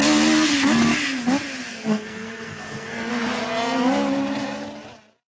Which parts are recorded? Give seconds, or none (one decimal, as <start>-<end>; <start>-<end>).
0.0-1.7; 3.1-5.4